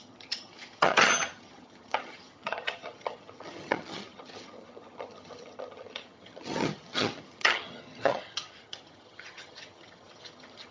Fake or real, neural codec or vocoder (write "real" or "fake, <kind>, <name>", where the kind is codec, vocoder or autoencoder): fake, vocoder, HiFi-GAN